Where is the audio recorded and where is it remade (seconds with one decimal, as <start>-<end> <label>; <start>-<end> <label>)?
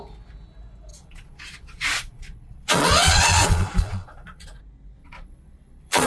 0.0-0.9 recorded; 0.9-4.6 remade; 4.6-5.0 recorded; 5.0-6.1 remade